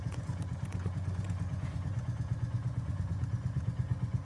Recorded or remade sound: remade